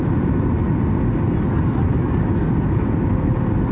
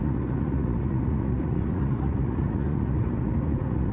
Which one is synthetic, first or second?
second